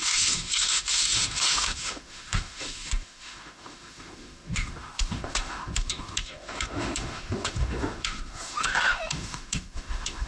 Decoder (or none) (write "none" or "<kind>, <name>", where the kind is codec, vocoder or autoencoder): autoencoder, DAC-VAE